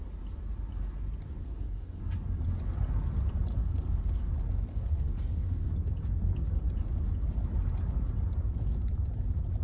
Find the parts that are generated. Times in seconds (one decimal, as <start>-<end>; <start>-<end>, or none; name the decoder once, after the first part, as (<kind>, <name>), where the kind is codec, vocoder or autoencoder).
1.4-2.0 (codec, SNAC); 3.5-4.3; 4.7-5.7